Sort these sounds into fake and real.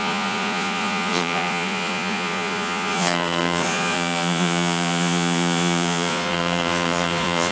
fake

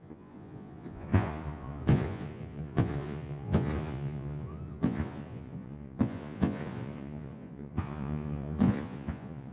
fake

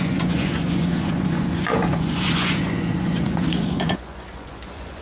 fake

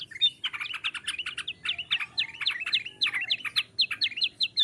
real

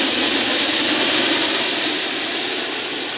real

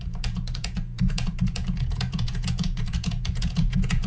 fake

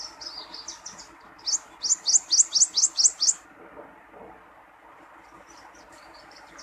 real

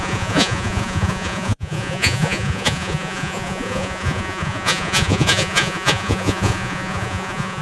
fake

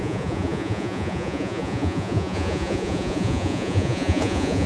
fake